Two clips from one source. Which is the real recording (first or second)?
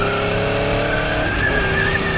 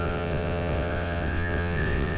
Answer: first